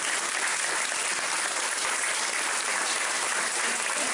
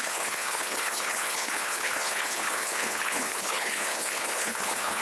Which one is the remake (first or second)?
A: second